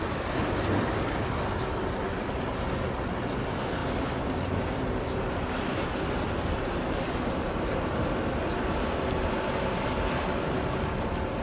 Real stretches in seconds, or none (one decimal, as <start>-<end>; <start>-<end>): 0.0-11.4